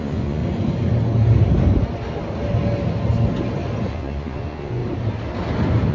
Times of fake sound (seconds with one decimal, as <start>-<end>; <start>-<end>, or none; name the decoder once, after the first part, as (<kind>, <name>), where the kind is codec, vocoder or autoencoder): 0.0-0.4 (vocoder, Vocos); 3.9-4.8